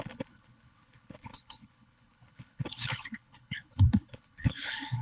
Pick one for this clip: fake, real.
fake